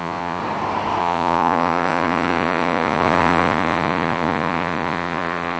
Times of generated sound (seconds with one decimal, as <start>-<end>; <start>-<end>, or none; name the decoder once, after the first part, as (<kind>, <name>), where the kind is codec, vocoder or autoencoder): 0.0-0.4 (vocoder, Vocos); 1.0-5.6